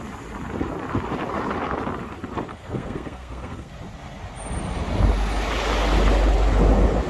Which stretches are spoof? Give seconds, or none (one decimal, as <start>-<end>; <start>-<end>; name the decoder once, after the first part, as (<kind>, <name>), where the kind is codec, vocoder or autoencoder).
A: 2.5-3.7 (codec, SNAC)